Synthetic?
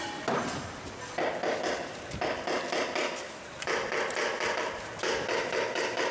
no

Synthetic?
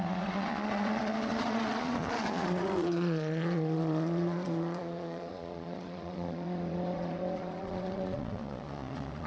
yes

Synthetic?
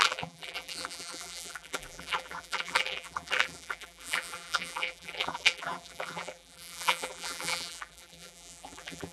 yes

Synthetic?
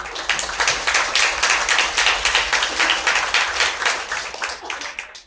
no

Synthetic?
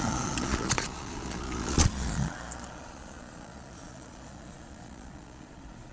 yes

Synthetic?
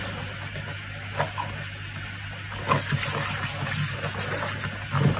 no